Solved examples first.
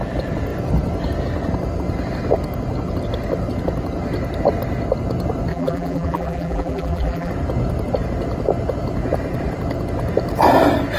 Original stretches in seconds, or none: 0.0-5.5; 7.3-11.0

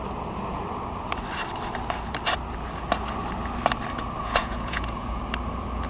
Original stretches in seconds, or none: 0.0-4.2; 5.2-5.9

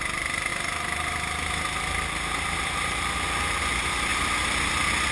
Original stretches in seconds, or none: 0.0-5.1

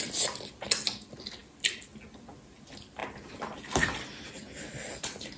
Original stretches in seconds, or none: 0.0-5.4

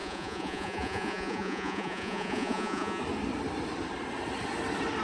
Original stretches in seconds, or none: 3.0-5.0

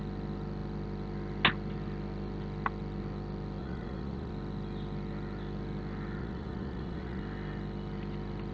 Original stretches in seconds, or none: 0.0-3.6; 4.3-6.2; 7.2-8.5

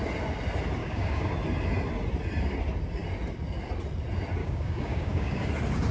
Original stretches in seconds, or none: 0.0-0.8; 1.3-4.4; 5.5-5.9

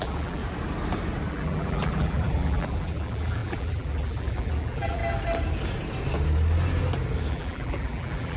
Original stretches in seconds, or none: 0.4-1.3; 5.0-7.3